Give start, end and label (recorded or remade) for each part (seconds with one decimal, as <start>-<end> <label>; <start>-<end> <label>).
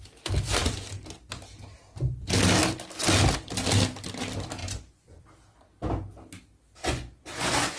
0.0-4.6 recorded; 4.6-5.2 remade; 5.2-6.8 recorded; 6.8-7.8 remade